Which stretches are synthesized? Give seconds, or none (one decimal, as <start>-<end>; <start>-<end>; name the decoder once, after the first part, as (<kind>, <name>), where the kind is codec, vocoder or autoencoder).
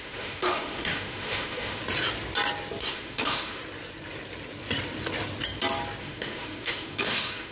0.0-1.8 (autoencoder, DAC-VAE); 2.9-3.6; 6.0-7.5